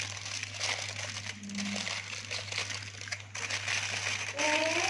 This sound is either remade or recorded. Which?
recorded